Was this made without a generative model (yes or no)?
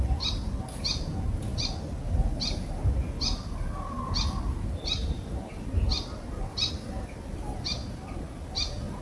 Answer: yes